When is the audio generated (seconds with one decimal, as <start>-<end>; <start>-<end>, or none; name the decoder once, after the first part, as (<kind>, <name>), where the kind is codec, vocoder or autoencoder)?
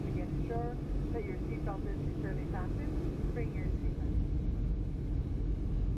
1.9-2.7 (autoencoder, DAC-VAE)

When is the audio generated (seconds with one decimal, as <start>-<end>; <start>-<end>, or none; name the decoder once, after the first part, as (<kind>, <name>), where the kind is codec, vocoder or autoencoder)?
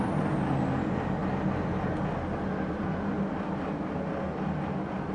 none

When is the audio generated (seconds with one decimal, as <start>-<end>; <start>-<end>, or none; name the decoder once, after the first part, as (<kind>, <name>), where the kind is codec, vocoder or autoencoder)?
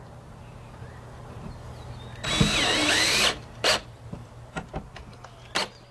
2.8-4.9 (vocoder, BigVGAN v2)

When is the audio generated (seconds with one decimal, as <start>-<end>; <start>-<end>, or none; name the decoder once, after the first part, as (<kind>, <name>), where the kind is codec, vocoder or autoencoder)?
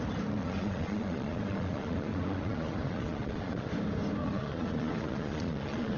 0.4-3.7 (vocoder, Vocos); 4.2-6.0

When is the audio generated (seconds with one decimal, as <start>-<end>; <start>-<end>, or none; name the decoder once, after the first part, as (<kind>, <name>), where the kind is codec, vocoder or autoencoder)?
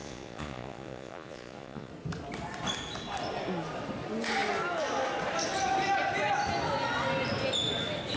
0.0-1.9 (vocoder, Vocos)